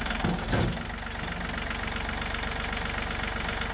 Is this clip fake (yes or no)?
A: no